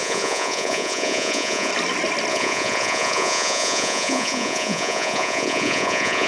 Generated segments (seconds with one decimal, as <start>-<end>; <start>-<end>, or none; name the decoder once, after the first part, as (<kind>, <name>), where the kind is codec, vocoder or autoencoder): 0.0-1.7 (vocoder, Vocos); 2.3-6.3